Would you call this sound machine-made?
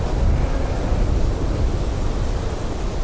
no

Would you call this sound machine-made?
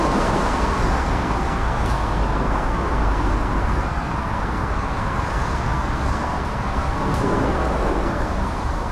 yes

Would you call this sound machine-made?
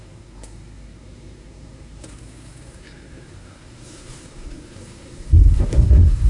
yes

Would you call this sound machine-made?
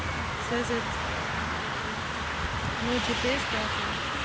no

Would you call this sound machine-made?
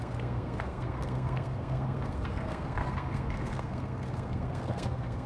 yes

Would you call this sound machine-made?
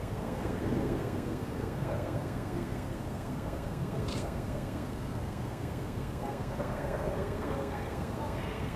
yes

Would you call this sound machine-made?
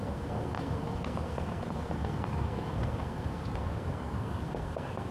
yes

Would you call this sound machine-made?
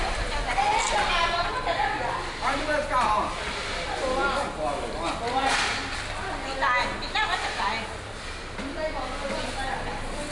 no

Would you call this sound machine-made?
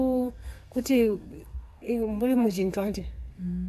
yes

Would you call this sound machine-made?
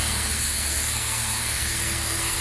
yes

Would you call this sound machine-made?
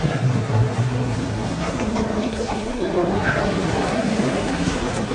yes